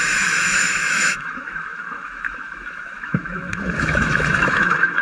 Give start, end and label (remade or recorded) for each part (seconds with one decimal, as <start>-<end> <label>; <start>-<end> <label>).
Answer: 0.0-5.0 remade